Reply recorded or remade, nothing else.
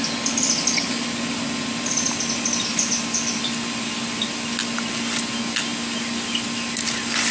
recorded